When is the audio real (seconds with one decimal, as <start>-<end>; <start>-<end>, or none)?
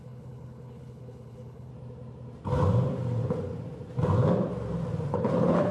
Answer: 1.7-5.1